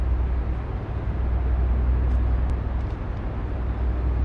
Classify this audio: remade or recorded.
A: recorded